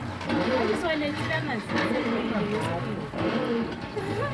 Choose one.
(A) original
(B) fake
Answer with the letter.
A